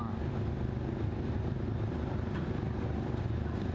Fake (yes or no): no